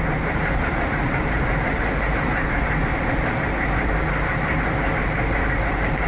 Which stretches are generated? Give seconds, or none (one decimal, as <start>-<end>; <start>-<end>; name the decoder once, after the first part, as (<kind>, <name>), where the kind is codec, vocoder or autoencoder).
0.0-2.9 (vocoder, BigVGAN v2); 5.4-6.1